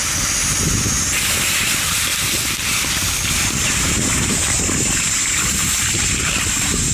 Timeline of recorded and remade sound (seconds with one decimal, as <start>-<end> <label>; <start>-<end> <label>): 0.0-1.7 recorded; 1.7-2.1 remade; 2.1-3.3 recorded; 3.3-4.4 remade; 4.4-6.0 recorded; 6.0-6.9 remade